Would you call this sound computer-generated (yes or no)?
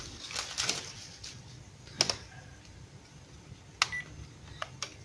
no